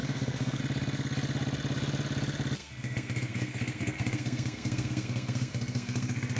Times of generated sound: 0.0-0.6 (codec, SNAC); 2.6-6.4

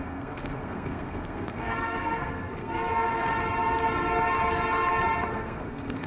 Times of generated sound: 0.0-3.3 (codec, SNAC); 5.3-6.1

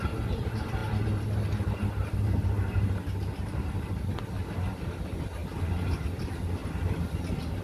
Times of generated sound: none